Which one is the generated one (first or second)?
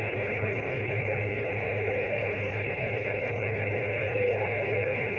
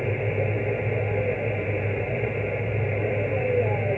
first